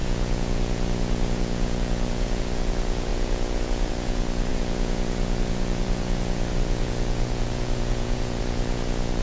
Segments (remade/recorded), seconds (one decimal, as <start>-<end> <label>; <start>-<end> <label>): 0.0-9.2 remade

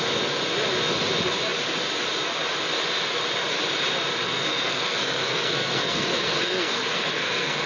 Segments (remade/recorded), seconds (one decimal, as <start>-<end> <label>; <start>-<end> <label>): 0.0-4.2 recorded; 4.2-7.7 remade